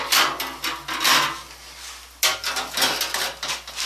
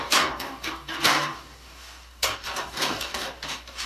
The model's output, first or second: second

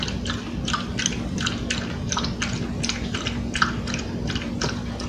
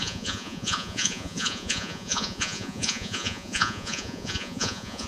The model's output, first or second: second